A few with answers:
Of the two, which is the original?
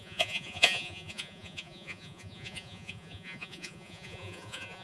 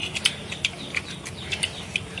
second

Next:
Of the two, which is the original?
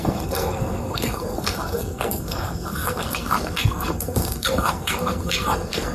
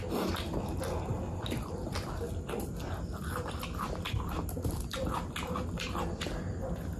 second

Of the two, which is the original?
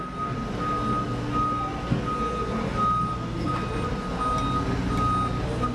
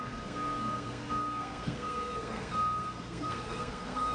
first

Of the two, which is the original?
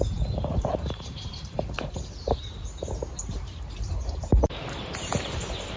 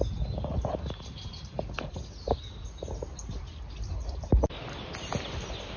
second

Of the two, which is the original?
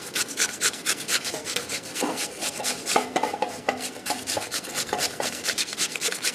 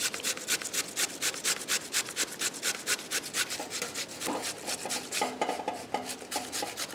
second